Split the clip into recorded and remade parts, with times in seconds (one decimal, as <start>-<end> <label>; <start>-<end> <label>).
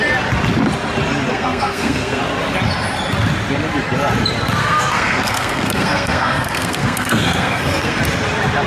0.0-1.3 recorded; 1.3-2.2 remade; 2.2-4.6 recorded; 4.6-8.0 remade; 8.0-8.7 recorded